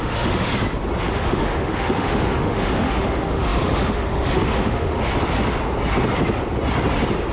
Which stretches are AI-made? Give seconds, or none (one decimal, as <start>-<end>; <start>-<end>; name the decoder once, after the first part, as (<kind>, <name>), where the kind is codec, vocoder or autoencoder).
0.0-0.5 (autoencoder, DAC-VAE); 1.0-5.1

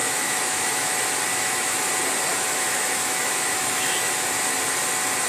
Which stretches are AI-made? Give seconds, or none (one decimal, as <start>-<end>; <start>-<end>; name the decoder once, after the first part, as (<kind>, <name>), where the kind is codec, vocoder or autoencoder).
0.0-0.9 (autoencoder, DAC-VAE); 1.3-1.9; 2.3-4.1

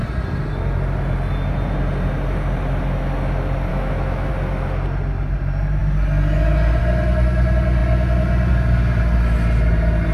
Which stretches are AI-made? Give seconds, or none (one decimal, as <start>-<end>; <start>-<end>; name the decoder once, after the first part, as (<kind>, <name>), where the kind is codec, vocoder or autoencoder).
3.7-4.3 (autoencoder, DAC-VAE)

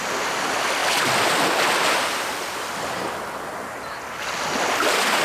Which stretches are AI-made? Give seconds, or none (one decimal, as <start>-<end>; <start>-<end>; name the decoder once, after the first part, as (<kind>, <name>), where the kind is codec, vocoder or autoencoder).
none

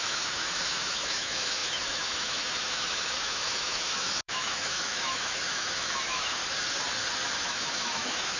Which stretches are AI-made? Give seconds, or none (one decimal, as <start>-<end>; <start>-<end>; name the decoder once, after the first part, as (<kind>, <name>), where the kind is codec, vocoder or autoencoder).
0.0-6.4 (autoencoder, DAC-VAE); 7.3-8.4

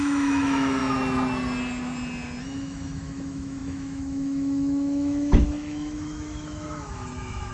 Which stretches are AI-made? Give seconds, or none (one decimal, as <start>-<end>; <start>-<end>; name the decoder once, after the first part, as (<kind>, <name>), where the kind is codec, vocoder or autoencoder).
0.0-0.8 (autoencoder, DAC-VAE); 2.4-7.5